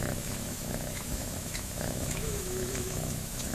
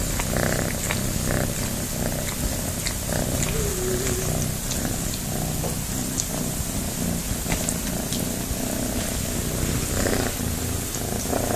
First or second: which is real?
second